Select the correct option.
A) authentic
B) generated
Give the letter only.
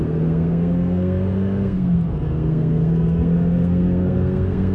B